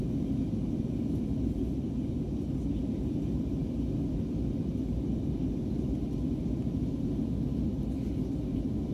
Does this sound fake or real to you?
real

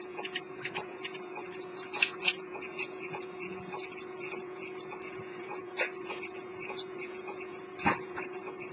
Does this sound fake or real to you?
fake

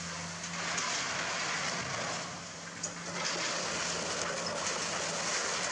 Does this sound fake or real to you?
real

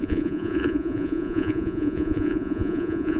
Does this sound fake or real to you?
fake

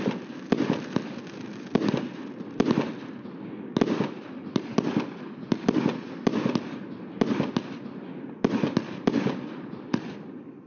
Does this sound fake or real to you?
real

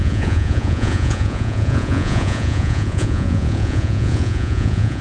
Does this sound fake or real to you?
fake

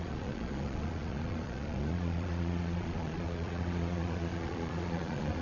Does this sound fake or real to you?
fake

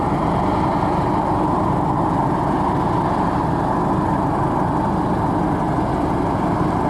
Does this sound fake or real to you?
real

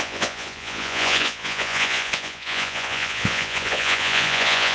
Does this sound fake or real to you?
fake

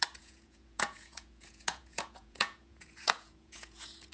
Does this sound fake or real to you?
fake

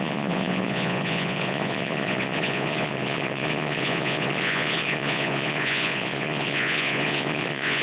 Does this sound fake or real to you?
fake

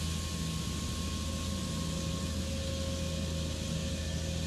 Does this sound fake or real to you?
real